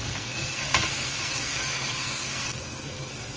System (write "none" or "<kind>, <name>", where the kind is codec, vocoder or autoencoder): codec, SNAC